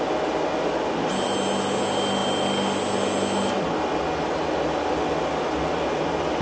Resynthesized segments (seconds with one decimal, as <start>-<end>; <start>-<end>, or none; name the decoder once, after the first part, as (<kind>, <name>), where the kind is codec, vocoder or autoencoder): none